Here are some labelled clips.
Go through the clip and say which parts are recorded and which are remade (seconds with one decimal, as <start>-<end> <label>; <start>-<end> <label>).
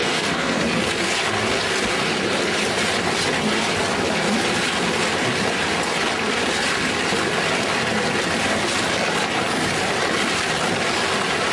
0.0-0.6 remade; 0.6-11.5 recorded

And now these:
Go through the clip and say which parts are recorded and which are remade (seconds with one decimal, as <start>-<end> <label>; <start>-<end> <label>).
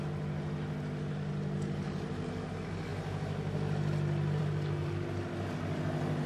0.0-6.3 recorded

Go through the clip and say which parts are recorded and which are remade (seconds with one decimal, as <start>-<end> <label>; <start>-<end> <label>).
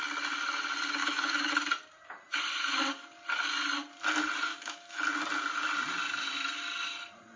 0.0-1.0 recorded; 1.0-1.5 remade; 1.5-4.5 recorded; 4.5-5.0 remade; 5.0-7.4 recorded